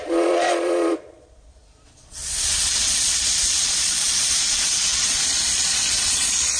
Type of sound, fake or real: fake